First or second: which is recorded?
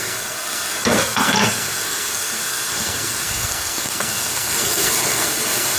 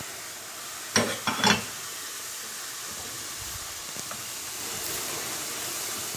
second